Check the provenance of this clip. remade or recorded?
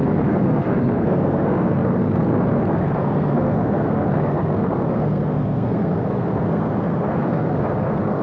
remade